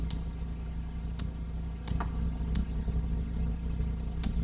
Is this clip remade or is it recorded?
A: recorded